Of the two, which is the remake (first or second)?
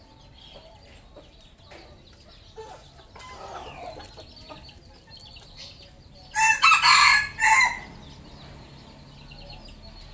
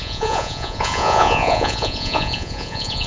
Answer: second